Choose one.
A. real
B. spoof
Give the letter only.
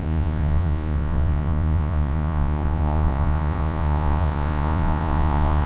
B